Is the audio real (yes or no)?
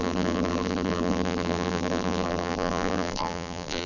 no